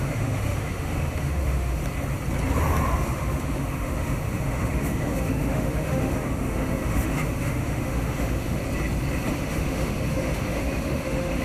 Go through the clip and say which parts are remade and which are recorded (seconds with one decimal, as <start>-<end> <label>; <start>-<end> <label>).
0.0-1.8 remade; 1.8-3.0 recorded; 3.0-8.6 remade; 8.6-9.3 recorded; 9.3-11.4 remade